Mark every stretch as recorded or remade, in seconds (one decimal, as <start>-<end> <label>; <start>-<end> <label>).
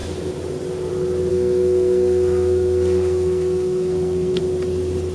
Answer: 0.0-1.3 recorded; 1.3-4.4 remade; 4.4-5.1 recorded